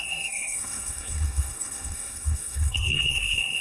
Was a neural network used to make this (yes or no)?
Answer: yes